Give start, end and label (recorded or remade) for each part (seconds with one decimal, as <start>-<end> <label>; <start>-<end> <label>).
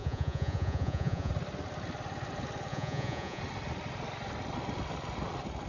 0.0-1.3 remade; 1.3-2.7 recorded; 2.7-3.4 remade; 3.4-5.7 recorded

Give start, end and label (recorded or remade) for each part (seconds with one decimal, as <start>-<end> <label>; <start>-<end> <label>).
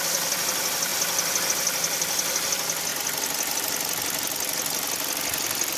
0.0-5.8 recorded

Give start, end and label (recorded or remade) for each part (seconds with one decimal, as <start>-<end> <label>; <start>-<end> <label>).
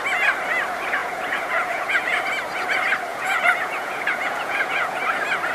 0.0-1.0 recorded; 1.0-2.2 remade; 2.2-3.1 recorded; 3.1-5.0 remade; 5.0-5.5 recorded